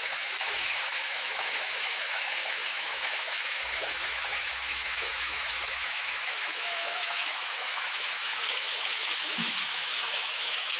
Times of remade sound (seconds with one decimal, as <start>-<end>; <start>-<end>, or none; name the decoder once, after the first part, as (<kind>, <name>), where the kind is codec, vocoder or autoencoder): 0.0-10.8 (autoencoder, DAC-VAE)